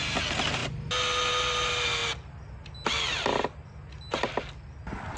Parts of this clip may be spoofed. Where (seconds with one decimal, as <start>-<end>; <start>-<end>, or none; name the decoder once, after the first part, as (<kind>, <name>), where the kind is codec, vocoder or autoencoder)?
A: none